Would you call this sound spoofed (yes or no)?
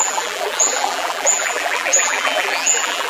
yes